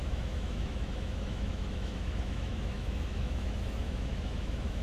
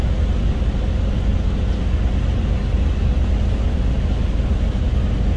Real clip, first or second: second